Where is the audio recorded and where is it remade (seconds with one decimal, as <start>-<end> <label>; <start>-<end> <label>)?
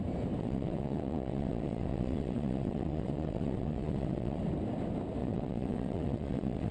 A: 0.0-0.4 recorded; 0.4-4.4 remade; 4.4-5.2 recorded; 5.2-6.7 remade